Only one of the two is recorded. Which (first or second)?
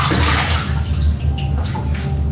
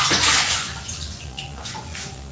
first